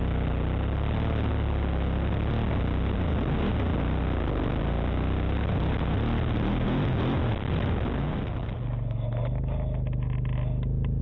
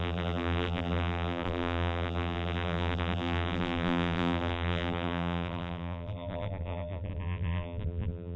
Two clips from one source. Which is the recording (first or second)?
first